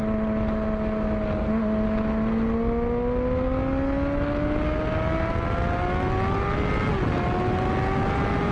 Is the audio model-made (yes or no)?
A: no